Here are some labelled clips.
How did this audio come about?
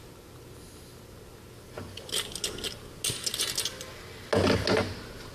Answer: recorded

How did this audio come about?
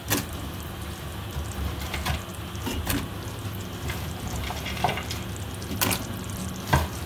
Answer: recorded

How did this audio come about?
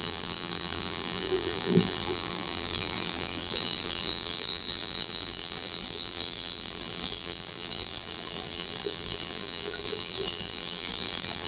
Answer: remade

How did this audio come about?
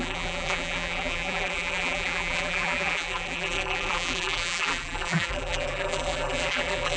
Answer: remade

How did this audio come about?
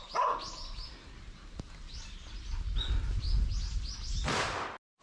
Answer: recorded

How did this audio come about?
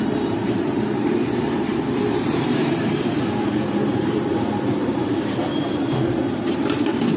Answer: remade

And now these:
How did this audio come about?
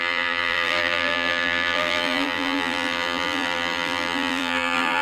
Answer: remade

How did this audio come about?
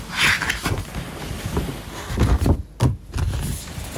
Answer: recorded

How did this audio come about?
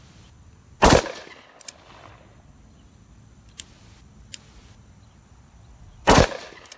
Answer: recorded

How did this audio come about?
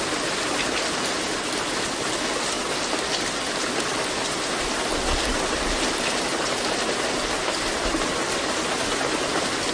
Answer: recorded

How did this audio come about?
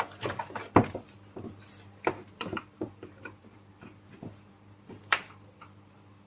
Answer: remade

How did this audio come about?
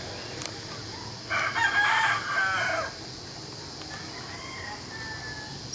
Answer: recorded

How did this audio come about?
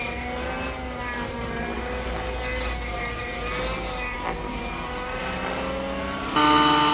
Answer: recorded